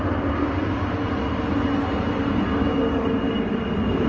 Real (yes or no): yes